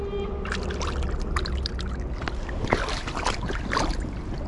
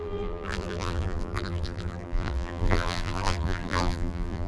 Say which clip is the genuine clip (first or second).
first